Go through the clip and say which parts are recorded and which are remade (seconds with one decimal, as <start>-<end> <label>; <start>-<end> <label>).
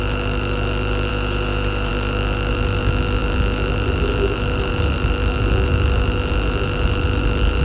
0.0-1.1 remade; 1.1-1.9 recorded; 1.9-7.6 remade